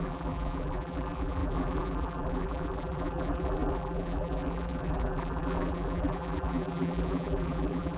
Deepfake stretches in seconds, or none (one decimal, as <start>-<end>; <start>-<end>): 0.0-8.0